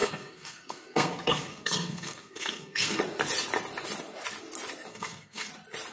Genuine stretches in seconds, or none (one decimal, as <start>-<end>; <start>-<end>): 3.0-4.9; 5.5-5.9